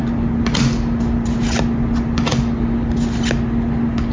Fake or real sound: real